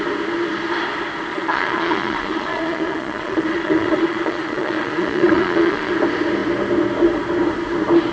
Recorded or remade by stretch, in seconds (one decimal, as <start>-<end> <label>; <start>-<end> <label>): 0.0-1.3 recorded; 1.3-5.9 remade; 5.9-8.1 recorded